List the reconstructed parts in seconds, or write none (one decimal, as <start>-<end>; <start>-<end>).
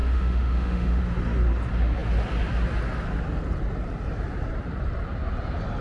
0.0-1.0